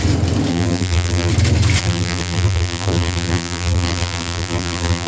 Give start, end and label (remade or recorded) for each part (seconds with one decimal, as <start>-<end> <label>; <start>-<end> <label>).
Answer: 0.0-0.5 recorded; 0.5-1.3 remade; 1.3-1.8 recorded; 1.8-5.1 remade